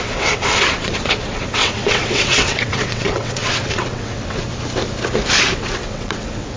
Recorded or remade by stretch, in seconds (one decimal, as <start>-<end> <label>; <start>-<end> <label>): 0.0-4.5 remade; 4.5-5.4 recorded; 5.4-6.6 remade